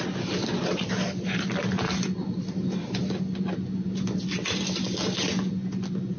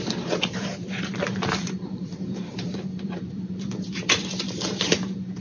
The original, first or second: first